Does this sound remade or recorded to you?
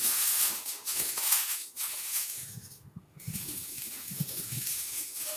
remade